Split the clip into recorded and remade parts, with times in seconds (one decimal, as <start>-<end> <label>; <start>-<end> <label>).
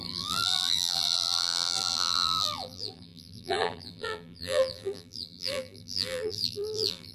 0.0-7.1 remade